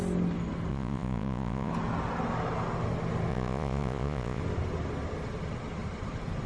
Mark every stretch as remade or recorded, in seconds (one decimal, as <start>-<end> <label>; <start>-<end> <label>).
0.0-0.7 recorded; 0.7-1.7 remade; 1.7-3.3 recorded; 3.3-4.4 remade; 4.4-6.5 recorded